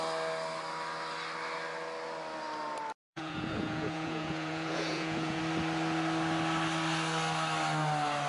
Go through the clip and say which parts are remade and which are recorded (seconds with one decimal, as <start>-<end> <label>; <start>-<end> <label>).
0.0-3.1 recorded; 3.1-5.4 remade; 5.4-8.3 recorded